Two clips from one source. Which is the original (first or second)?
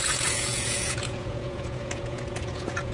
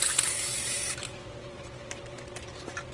second